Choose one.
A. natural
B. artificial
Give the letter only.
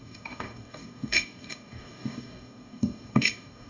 B